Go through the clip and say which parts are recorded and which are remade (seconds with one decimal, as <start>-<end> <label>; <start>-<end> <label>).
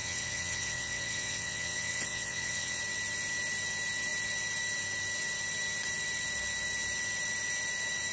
0.0-2.8 remade; 2.8-8.1 recorded